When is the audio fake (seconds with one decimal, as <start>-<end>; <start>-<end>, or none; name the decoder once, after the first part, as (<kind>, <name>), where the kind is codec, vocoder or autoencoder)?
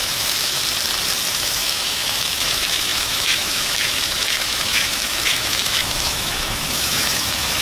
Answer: 0.0-0.6 (autoencoder, DAC-VAE); 1.3-7.6